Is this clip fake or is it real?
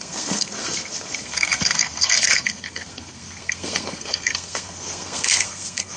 fake